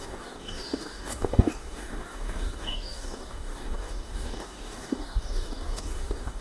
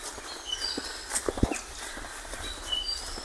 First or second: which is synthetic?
first